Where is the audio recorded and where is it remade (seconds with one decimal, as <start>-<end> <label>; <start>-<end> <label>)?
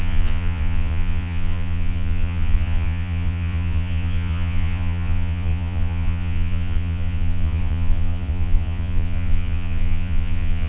0.0-10.7 remade